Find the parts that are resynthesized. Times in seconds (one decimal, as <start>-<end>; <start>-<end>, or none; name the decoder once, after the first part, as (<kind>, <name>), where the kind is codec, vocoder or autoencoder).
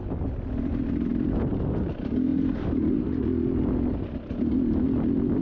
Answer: none